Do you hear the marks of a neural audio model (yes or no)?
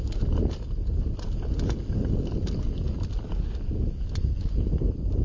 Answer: no